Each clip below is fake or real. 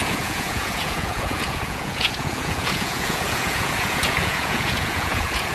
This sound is fake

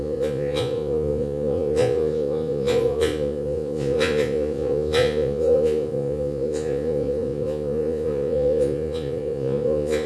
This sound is fake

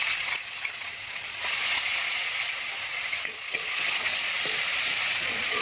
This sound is fake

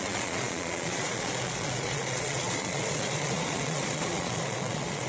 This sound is fake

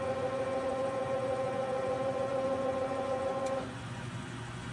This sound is fake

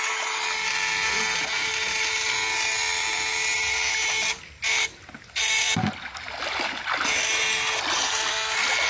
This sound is real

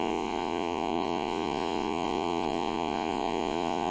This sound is fake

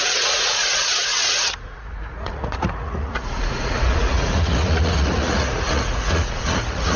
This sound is fake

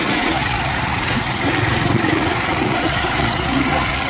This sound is fake